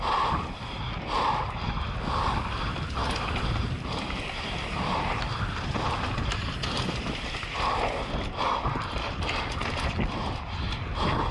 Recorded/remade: recorded